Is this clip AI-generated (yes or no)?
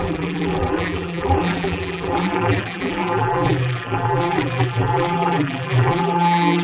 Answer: yes